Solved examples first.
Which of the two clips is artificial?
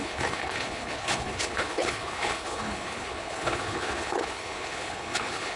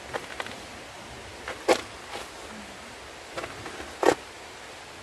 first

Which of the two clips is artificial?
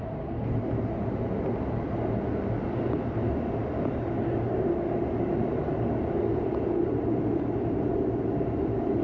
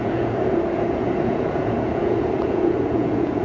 second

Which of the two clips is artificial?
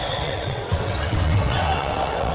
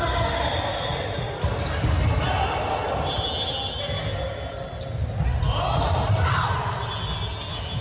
first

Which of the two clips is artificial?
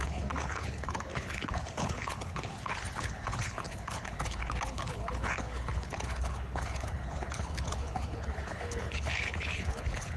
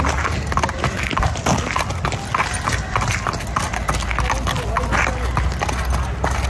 first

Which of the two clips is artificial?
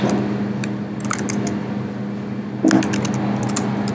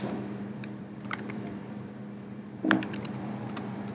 second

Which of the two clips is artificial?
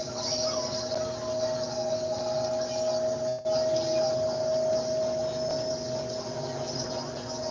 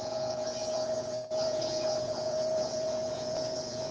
second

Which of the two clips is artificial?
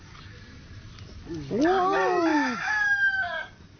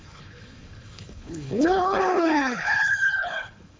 second